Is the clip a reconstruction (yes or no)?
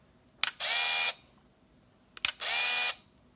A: no